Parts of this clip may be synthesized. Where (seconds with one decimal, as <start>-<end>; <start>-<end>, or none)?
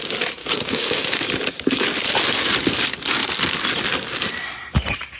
0.4-1.3